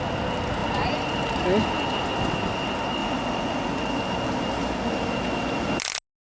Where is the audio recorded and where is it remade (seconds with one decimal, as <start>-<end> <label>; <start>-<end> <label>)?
0.0-3.0 recorded; 3.0-3.7 remade; 3.7-6.2 recorded